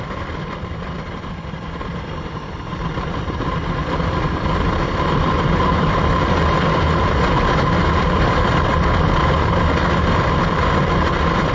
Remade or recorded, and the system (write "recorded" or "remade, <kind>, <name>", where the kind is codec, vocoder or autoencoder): remade, vocoder, BigVGAN v2